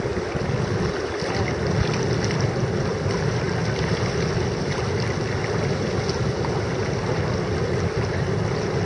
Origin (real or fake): real